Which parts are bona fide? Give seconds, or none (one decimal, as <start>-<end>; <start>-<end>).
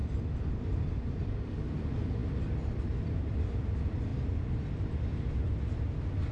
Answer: 0.0-6.3